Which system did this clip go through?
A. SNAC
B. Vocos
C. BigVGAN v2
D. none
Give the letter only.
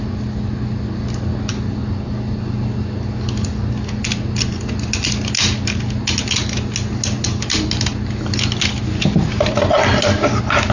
D